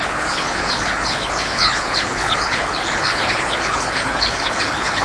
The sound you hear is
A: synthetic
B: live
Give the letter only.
A